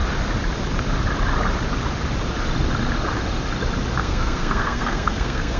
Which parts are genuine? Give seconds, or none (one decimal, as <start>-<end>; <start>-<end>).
0.0-4.0